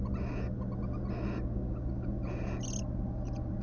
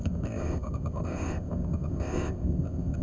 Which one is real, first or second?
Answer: first